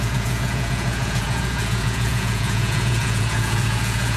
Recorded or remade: remade